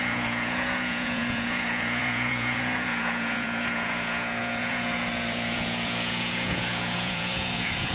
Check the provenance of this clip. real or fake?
fake